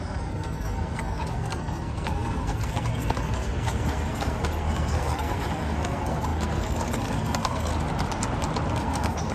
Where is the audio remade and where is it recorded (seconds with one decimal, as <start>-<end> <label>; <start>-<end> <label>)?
0.0-7.7 remade; 7.7-8.7 recorded; 8.7-9.3 remade